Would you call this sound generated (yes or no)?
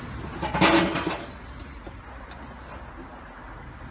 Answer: no